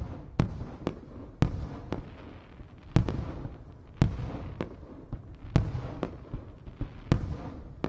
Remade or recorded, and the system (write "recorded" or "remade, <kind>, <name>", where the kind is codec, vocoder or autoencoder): recorded